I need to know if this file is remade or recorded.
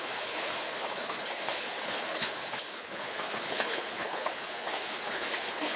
remade